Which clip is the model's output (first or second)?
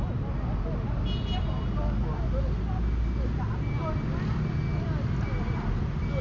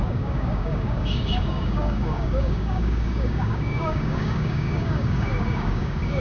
second